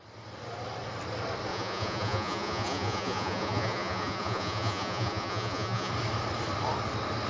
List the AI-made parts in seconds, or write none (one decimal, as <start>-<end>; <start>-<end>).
1.5-5.9